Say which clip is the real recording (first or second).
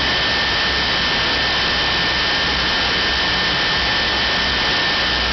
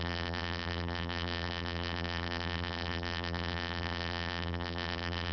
first